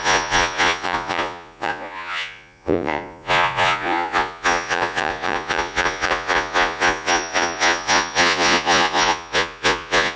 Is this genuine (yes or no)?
no